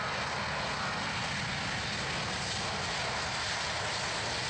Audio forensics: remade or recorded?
recorded